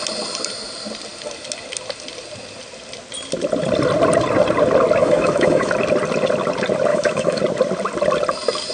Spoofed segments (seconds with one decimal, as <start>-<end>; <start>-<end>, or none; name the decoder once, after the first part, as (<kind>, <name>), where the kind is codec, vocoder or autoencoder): 5.0-5.7 (autoencoder, DAC-VAE); 6.9-7.4